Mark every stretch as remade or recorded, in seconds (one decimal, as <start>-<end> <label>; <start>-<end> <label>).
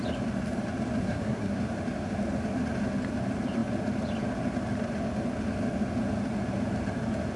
0.0-1.0 recorded; 1.0-1.6 remade; 1.6-7.4 recorded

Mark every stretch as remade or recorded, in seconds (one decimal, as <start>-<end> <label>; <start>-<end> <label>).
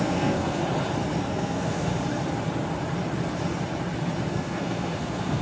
0.0-0.6 remade; 0.6-1.3 recorded; 1.3-1.9 remade; 1.9-4.3 recorded; 4.3-5.4 remade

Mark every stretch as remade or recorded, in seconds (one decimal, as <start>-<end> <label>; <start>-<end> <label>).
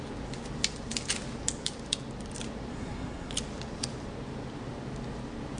0.0-2.7 recorded; 2.7-3.3 remade; 3.3-5.6 recorded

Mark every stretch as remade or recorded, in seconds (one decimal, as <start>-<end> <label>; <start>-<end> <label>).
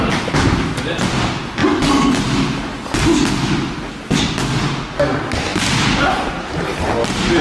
0.0-7.4 recorded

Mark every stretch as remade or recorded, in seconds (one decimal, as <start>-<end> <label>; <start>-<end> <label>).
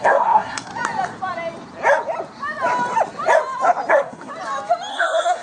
0.0-0.7 remade; 0.7-3.9 recorded; 3.9-4.3 remade; 4.3-4.9 recorded; 4.9-5.4 remade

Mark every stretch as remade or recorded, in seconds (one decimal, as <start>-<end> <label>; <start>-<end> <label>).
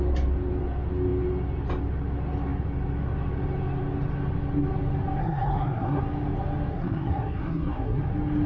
0.0-5.2 recorded; 5.2-6.0 remade; 6.0-6.7 recorded; 6.7-8.0 remade; 8.0-8.5 recorded